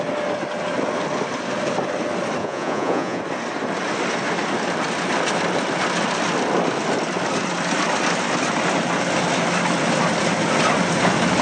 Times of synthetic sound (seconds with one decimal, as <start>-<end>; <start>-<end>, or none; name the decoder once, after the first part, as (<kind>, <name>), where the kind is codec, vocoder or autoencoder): 2.4-3.2 (vocoder, Vocos)